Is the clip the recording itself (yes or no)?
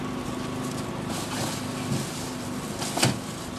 yes